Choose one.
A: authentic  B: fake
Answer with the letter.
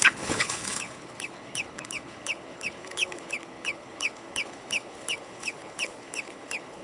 B